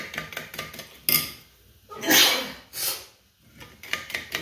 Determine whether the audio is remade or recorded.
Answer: recorded